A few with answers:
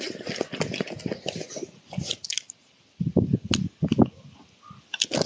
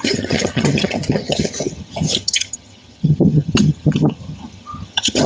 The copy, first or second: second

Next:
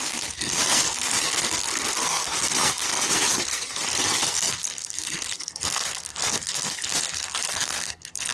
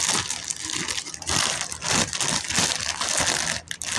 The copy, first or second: first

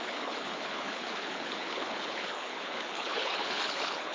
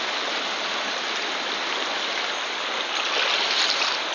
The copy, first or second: first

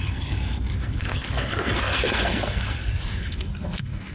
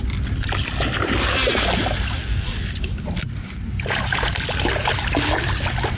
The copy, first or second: first